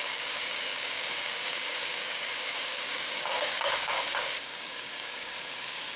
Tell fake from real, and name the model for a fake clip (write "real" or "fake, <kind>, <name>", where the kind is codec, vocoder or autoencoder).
fake, codec, DAC